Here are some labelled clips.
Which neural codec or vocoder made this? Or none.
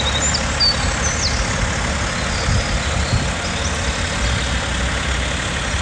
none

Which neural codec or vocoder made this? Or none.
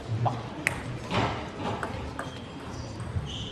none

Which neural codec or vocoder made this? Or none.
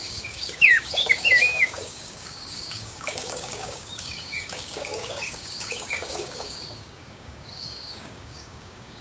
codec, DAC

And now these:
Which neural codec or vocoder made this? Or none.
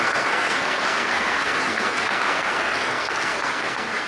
codec, SNAC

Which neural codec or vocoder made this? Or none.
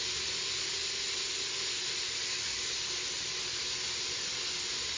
none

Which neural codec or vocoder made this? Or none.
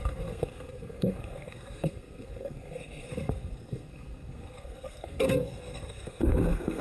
codec, SNAC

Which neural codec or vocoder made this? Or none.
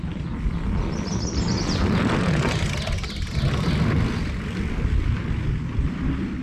none